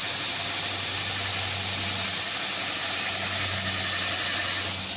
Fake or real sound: real